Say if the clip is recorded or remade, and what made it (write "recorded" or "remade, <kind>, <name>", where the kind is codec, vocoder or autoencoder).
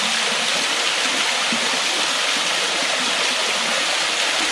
recorded